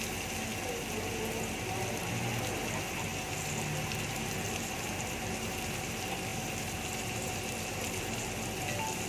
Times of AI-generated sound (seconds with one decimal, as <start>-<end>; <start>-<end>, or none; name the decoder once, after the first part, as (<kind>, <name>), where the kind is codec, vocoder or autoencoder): 6.3-8.2 (vocoder, BigVGAN v2)